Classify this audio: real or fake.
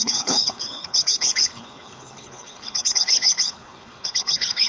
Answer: fake